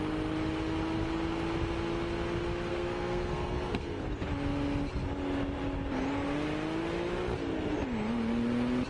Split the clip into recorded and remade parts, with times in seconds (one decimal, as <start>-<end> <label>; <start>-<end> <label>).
0.0-2.7 recorded; 2.7-4.1 remade; 4.1-8.9 recorded